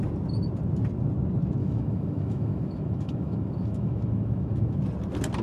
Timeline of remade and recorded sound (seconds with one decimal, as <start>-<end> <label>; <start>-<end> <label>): 0.0-1.6 recorded; 1.6-4.8 remade; 4.8-5.4 recorded